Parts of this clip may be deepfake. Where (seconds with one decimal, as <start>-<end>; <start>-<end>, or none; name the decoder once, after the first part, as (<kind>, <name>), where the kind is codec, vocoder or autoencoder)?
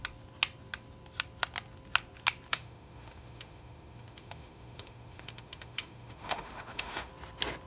2.5-7.1 (autoencoder, DAC-VAE)